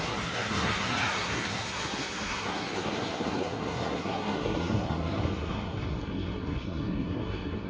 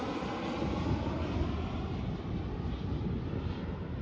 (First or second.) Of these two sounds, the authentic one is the second